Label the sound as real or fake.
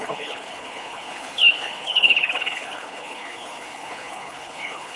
fake